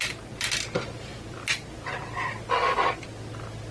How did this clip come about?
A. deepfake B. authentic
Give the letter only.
B